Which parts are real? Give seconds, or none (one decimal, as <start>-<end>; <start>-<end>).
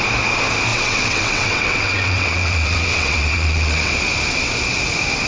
0.0-0.7; 3.9-5.3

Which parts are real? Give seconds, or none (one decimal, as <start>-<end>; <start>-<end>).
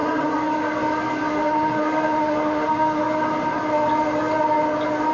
0.0-1.3; 3.0-5.1